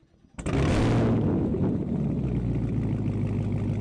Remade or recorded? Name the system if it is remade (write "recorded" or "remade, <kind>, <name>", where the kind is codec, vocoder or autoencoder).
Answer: recorded